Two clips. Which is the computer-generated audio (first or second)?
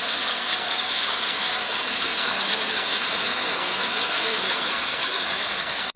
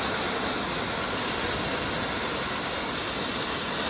first